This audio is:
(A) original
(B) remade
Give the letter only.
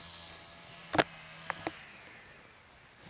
A